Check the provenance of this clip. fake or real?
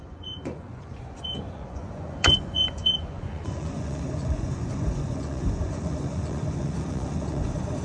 fake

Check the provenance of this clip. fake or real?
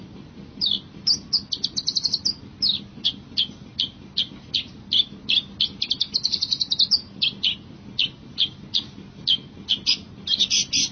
real